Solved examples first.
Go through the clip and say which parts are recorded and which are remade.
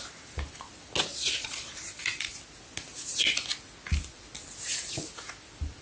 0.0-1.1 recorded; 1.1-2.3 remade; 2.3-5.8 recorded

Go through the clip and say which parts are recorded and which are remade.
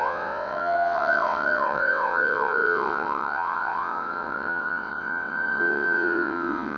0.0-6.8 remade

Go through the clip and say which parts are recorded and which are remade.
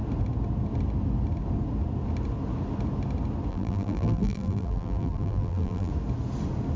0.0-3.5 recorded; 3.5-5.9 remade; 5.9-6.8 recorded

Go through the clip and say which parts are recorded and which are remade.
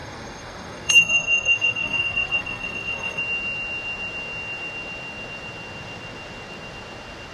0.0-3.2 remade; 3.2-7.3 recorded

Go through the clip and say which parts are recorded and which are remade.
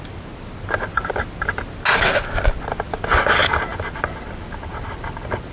0.0-5.5 recorded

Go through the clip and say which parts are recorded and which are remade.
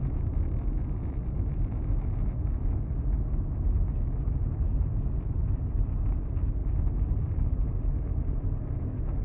0.0-9.2 recorded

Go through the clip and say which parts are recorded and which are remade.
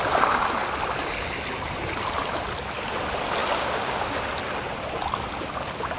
0.0-3.4 recorded; 3.4-4.0 remade; 4.0-6.0 recorded